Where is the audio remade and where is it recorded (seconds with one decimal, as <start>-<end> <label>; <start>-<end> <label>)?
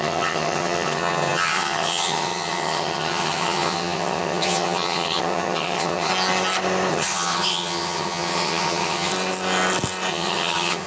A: 0.0-6.1 remade; 6.1-6.9 recorded; 6.9-9.1 remade; 9.1-10.1 recorded; 10.1-10.9 remade